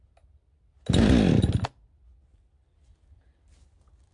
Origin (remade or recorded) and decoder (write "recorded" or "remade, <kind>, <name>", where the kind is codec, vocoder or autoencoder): recorded